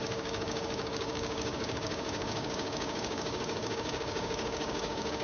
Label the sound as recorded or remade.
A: remade